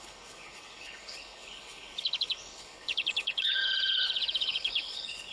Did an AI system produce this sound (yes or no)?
yes